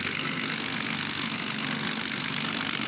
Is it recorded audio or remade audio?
remade